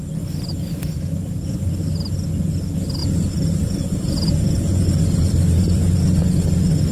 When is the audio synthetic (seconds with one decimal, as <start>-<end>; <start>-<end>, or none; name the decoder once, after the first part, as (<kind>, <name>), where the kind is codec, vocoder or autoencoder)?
0.5-1.7 (vocoder, BigVGAN v2); 3.0-6.2